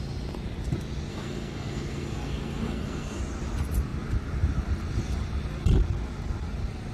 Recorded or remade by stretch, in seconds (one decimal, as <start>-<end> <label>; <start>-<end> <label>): 0.0-1.1 recorded; 1.1-3.2 remade; 3.2-6.9 recorded